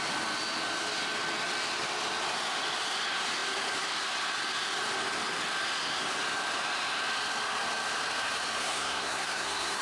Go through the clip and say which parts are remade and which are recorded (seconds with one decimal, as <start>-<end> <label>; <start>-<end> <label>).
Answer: 0.0-8.6 recorded; 8.6-9.8 remade